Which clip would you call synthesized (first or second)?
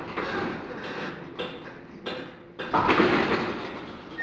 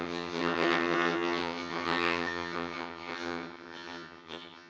second